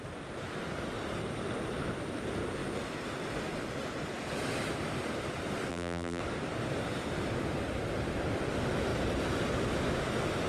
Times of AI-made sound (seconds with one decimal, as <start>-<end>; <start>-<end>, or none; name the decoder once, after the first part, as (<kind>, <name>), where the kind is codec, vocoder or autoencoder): 5.7-6.2 (vocoder, BigVGAN v2)